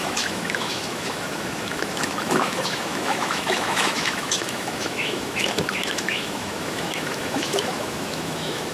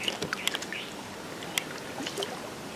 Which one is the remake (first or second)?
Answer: first